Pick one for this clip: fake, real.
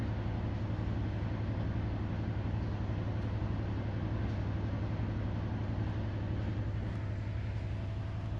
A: real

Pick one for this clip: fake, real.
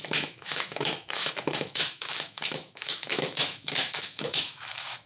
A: fake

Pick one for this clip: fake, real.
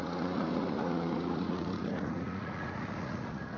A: fake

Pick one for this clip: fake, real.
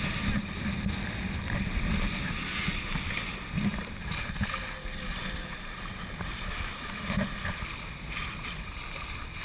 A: real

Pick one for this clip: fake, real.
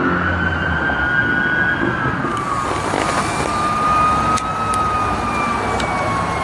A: real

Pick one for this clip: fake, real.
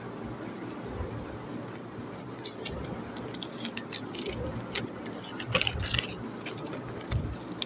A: real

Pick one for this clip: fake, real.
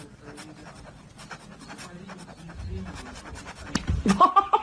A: real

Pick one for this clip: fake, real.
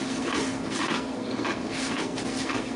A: fake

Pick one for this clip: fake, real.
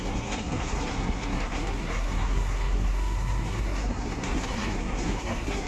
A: fake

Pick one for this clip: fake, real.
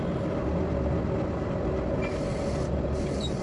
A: real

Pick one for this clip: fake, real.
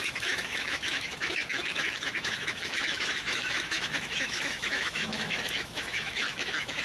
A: fake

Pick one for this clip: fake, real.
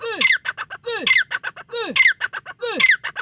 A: real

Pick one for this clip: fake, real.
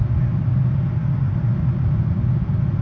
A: real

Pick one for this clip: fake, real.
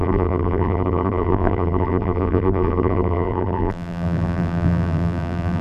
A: fake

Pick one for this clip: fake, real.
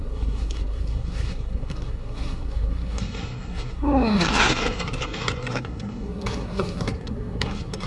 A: fake